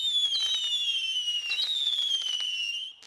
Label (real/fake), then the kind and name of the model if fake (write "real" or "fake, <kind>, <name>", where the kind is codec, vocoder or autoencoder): real